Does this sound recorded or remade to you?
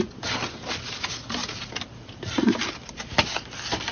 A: recorded